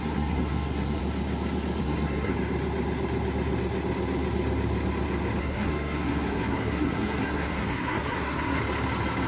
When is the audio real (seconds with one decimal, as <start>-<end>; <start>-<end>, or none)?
1.0-1.8; 2.3-5.4; 8.6-9.3